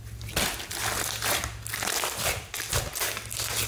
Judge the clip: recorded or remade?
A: recorded